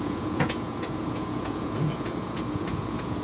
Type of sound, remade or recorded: remade